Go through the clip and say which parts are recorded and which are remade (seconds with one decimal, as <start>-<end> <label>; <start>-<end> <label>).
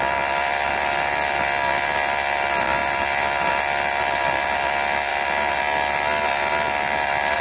0.0-7.4 recorded